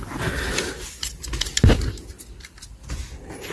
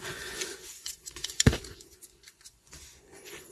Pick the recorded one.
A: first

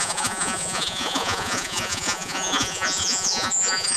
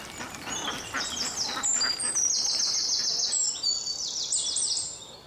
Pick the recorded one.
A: second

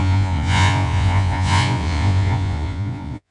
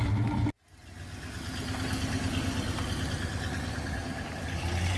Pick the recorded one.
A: second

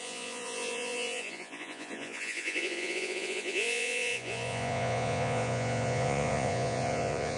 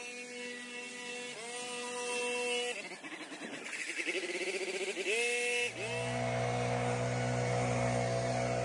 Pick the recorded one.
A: second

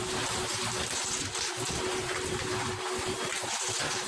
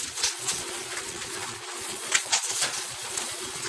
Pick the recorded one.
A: first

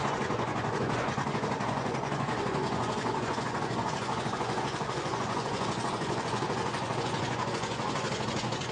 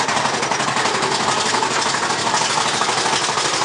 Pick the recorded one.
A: second